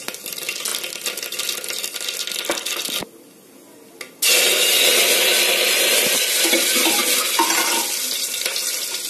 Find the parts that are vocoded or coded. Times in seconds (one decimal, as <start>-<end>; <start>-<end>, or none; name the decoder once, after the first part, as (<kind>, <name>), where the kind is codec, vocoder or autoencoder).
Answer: none